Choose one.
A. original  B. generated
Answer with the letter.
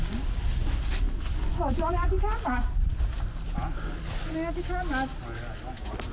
A